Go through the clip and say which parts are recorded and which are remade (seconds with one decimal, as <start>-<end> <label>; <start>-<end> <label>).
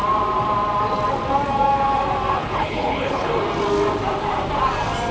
0.0-2.4 recorded; 2.4-3.3 remade; 3.3-5.1 recorded